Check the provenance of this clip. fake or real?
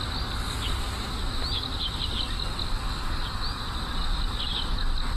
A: real